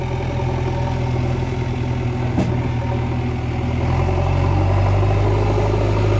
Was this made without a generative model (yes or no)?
yes